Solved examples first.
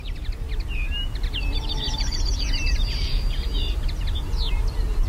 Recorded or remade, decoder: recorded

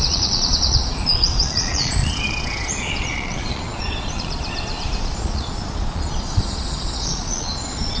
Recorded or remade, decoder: remade, vocoder, Vocos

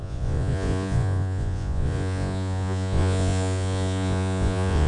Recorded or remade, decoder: remade, vocoder, Vocos